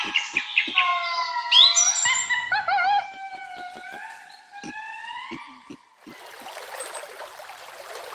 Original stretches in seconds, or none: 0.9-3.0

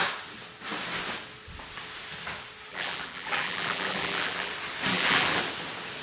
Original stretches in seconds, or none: 0.0-2.7; 4.5-4.9; 5.4-6.0

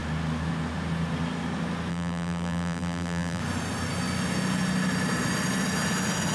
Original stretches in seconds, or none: 0.0-1.9; 3.4-6.3

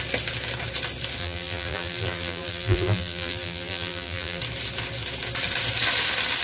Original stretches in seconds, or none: 0.0-1.2; 4.4-6.4

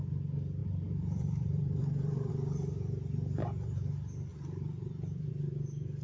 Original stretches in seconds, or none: 0.0-0.6; 2.3-4.3; 5.3-6.0

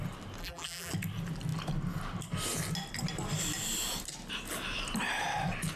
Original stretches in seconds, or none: 0.0-0.4; 0.9-5.8

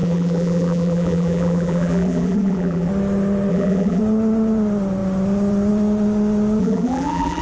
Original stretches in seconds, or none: 2.9-3.5; 4.0-6.6